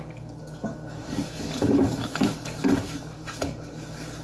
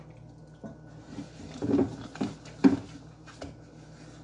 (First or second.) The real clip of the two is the second